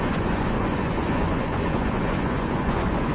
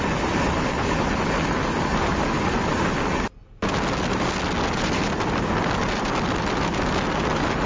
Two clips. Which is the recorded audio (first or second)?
second